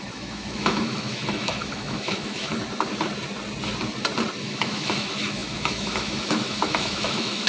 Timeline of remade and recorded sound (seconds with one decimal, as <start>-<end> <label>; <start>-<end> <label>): 0.0-2.5 remade; 2.5-4.4 recorded; 4.4-7.5 remade